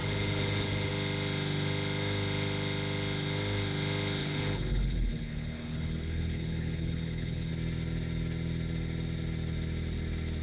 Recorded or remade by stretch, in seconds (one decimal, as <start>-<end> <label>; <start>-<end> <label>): 0.0-0.9 remade; 0.9-4.2 recorded; 4.2-7.5 remade; 7.5-10.4 recorded